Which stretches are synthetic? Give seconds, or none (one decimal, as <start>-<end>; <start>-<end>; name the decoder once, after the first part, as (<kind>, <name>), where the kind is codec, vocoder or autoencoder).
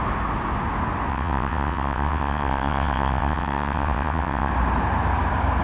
1.1-4.5 (vocoder, WaveNeXt)